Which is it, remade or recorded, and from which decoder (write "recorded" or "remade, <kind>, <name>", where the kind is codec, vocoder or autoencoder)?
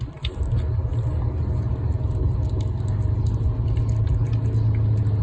recorded